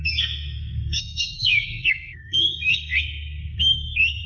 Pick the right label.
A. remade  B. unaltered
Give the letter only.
A